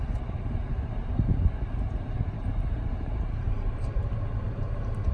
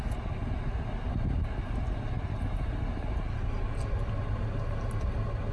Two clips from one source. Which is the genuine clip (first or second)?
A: second